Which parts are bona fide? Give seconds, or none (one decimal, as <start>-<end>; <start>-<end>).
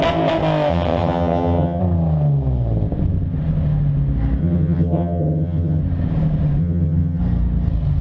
0.0-0.7; 1.8-4.4; 5.8-6.6; 7.2-8.0